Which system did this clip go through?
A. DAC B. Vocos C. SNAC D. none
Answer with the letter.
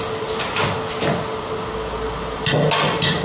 D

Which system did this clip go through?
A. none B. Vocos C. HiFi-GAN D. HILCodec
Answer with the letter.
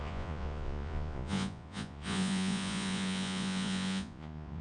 B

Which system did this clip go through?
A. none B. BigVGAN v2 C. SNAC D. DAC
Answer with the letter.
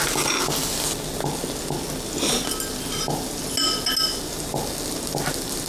A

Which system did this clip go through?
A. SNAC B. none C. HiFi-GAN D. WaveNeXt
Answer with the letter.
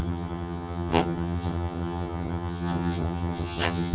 C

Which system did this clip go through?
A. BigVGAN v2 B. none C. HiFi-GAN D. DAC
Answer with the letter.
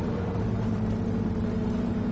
A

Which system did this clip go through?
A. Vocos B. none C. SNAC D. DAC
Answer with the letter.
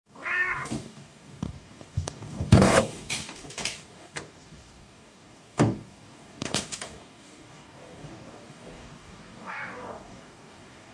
D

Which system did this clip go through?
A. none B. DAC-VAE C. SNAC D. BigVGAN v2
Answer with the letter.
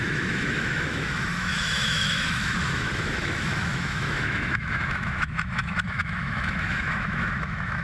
B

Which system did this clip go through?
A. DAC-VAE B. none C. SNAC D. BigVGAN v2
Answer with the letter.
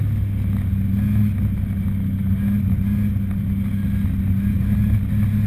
B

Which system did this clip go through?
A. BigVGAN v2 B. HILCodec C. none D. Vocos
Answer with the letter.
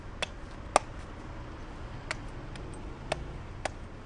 C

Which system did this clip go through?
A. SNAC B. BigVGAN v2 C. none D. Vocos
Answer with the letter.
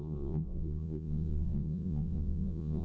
D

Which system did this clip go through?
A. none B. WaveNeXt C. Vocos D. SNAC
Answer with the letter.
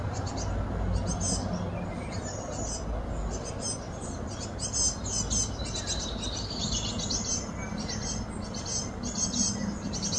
A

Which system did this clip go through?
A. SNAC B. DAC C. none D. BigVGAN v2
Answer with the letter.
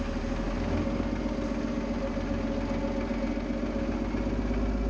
C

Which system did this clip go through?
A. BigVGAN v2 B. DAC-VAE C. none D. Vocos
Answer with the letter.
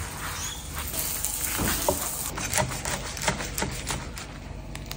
C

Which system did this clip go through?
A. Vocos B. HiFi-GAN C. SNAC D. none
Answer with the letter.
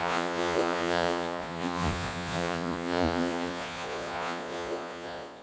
A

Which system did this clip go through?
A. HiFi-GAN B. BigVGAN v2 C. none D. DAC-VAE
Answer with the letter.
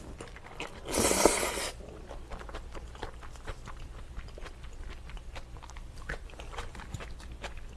B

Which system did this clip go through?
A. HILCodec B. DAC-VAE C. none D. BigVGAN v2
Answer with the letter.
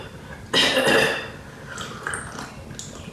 C